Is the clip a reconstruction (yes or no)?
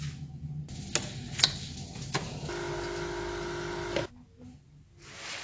no